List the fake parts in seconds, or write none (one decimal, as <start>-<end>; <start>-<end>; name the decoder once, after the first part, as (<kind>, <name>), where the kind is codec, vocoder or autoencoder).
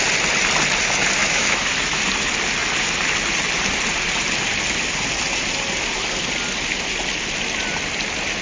1.2-2.0 (autoencoder, DAC-VAE)